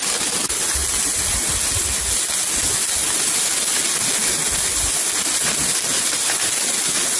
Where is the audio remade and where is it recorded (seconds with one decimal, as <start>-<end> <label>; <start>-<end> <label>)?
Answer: 0.0-7.2 recorded